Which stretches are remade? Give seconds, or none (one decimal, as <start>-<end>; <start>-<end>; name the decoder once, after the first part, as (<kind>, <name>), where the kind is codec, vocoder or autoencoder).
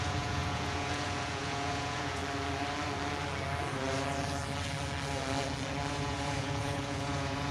0.0-2.2 (vocoder, Vocos); 5.9-7.5